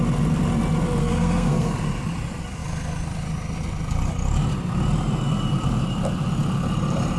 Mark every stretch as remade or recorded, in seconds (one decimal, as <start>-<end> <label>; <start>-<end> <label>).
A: 0.0-1.0 recorded; 1.0-1.7 remade; 1.7-7.2 recorded